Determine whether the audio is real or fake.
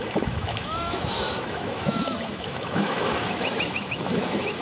fake